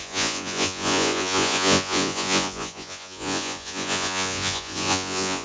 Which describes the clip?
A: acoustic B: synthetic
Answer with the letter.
B